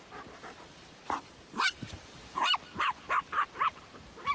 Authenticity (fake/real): fake